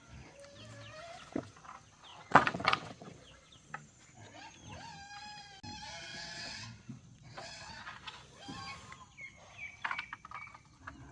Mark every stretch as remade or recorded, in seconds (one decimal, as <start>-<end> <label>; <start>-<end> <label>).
0.0-2.1 recorded; 2.1-3.1 remade; 3.1-6.1 recorded; 6.1-7.8 remade; 7.8-11.1 recorded